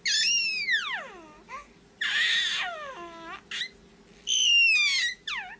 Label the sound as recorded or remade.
recorded